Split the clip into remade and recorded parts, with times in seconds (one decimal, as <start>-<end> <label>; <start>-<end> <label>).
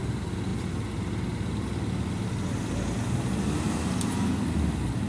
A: 0.0-5.1 recorded